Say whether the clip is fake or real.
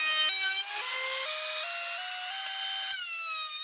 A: real